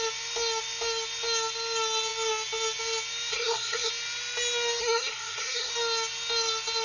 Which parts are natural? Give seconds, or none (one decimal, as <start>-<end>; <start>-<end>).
0.0-3.3; 3.9-4.8; 5.7-6.8